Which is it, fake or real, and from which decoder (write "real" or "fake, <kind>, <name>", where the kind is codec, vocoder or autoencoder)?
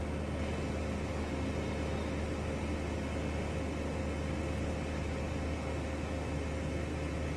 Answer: real